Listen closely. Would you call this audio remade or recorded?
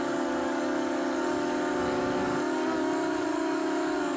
remade